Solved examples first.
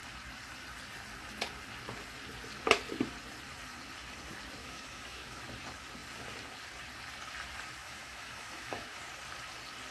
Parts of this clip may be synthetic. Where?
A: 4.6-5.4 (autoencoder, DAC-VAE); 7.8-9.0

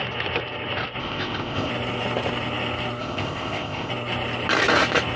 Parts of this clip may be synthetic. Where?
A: 1.0-1.7 (codec, ZipCodec); 3.0-3.9

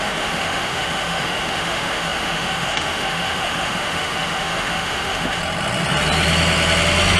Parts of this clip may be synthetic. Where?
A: 0.0-5.4 (autoencoder, DAC-VAE)

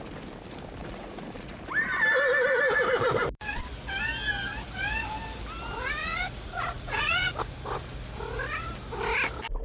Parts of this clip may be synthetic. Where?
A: 0.8-1.6 (vocoder, Vocos); 6.0-7.3